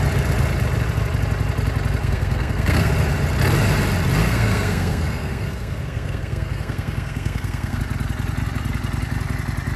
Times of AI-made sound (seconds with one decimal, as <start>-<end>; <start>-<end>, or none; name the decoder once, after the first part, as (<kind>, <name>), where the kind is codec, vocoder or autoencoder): 2.0-2.9 (codec, SNAC); 4.2-7.8